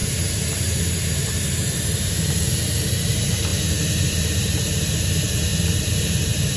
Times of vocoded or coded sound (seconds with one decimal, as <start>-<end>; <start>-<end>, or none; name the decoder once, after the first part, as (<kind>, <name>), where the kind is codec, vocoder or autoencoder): 0.0-3.5 (vocoder, BigVGAN v2); 4.0-6.6